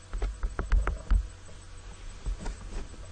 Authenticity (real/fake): real